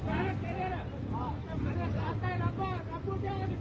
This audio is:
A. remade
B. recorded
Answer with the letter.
B